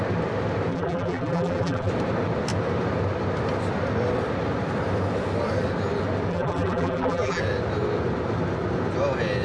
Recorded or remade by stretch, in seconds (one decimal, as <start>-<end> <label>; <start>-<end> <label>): 0.0-0.7 recorded; 0.7-1.9 remade; 1.9-6.3 recorded; 6.3-7.4 remade; 7.4-9.4 recorded